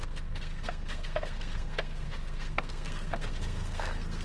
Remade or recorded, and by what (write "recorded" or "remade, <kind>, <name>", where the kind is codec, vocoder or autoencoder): remade, codec, SNAC